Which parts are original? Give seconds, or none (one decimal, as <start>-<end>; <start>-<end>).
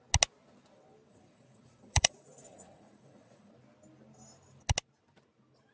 0.0-1.1; 3.5-5.7